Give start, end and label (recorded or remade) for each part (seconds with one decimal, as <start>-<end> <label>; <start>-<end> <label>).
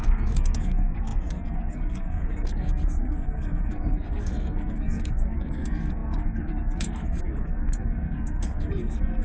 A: 0.0-9.2 remade